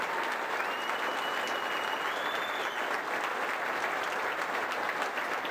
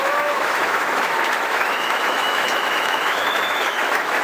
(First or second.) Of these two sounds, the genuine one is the first